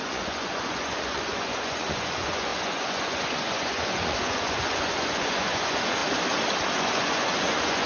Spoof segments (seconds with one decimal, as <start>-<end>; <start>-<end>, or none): 0.0-6.0; 6.7-7.9